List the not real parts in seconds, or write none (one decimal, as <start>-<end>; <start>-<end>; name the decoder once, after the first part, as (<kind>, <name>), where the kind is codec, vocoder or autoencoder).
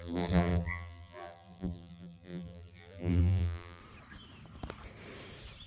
0.0-3.8 (vocoder, BigVGAN v2)